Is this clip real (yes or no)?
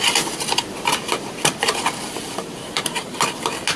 yes